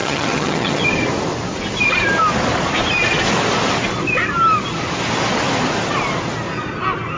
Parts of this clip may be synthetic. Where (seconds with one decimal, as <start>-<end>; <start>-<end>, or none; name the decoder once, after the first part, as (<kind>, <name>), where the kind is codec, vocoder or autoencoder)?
0.0-0.8 (vocoder, HiFi-GAN)